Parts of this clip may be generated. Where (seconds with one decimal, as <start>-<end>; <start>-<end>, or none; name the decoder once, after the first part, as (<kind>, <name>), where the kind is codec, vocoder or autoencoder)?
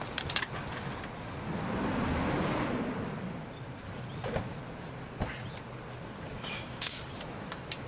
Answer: 6.3-7.0 (autoencoder, DAC-VAE)